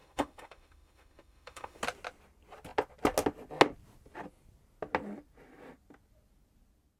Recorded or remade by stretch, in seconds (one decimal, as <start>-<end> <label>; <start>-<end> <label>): 0.0-1.8 remade; 1.8-7.0 recorded